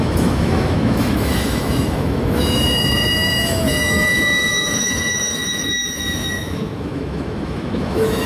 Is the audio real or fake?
fake